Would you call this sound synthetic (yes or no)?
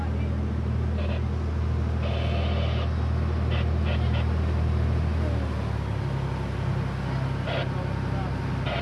no